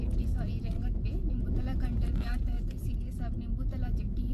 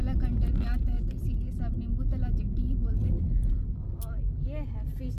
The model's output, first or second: first